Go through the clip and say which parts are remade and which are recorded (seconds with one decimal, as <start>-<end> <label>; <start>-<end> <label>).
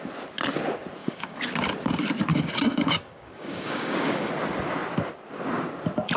0.0-1.0 recorded; 1.0-1.5 remade; 1.5-2.3 recorded; 2.3-4.3 remade; 4.3-6.2 recorded